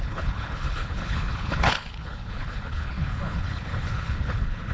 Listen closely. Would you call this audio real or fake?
fake